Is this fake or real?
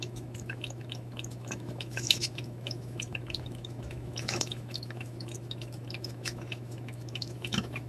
fake